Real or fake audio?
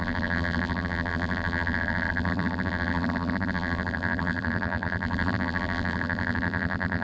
fake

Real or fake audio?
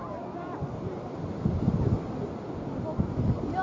real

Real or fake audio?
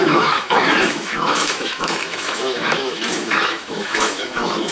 fake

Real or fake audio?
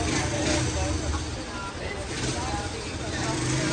real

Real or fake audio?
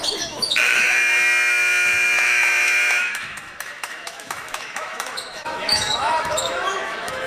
fake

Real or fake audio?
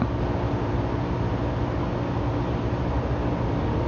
real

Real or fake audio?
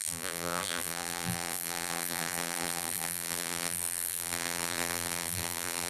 fake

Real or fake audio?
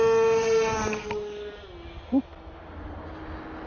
real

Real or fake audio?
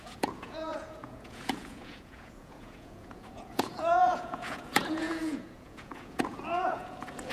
fake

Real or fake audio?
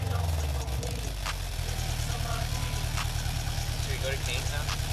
real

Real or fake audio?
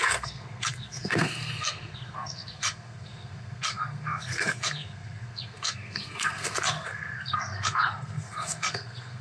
fake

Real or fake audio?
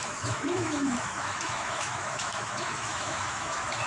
fake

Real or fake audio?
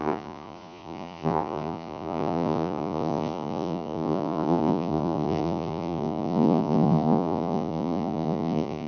fake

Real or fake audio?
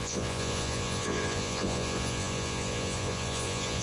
fake